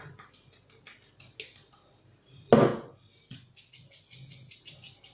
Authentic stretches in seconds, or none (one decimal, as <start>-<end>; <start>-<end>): 0.0-5.1